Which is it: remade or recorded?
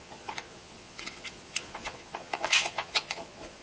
remade